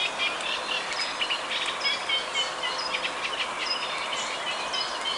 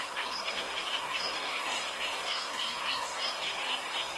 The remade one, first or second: second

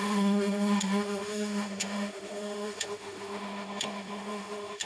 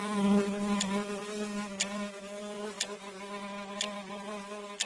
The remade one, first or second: first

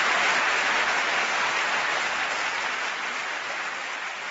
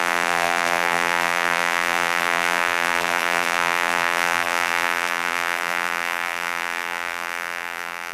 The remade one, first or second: second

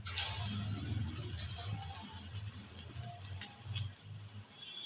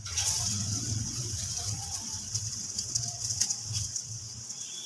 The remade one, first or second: second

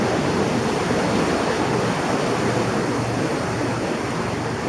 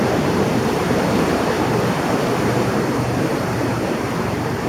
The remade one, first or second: second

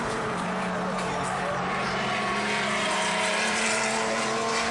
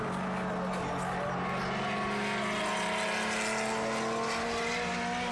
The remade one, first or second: first